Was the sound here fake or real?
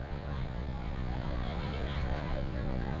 fake